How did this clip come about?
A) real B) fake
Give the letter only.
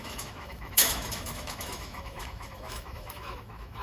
B